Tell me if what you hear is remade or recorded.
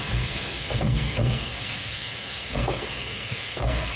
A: remade